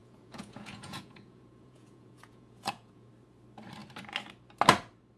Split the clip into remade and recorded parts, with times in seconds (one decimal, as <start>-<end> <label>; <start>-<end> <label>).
0.0-3.1 remade; 3.1-5.2 recorded